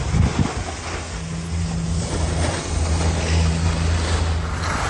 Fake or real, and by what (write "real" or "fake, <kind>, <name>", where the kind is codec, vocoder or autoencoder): real